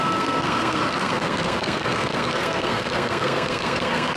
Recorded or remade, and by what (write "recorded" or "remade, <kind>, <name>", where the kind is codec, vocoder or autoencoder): remade, codec, SNAC